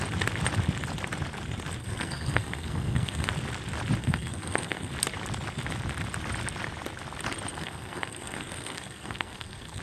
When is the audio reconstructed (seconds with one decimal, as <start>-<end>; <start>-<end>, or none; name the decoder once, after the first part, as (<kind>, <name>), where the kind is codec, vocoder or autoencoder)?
1.8-3.3 (codec, SNAC); 4.0-4.9; 7.5-9.8